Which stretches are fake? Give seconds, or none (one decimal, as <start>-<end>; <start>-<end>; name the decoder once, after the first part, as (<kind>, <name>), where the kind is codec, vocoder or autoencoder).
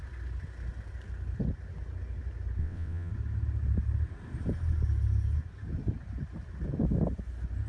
2.6-3.1 (vocoder, WaveNeXt)